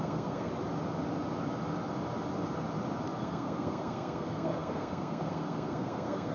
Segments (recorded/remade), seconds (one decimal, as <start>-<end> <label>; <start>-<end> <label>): 0.0-0.5 remade; 0.5-3.2 recorded; 3.2-6.3 remade